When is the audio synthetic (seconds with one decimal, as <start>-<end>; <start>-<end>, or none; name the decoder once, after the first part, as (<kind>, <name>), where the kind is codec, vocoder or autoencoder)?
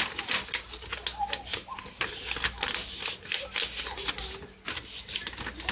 none